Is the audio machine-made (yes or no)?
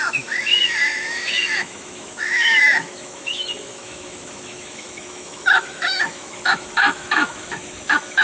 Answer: yes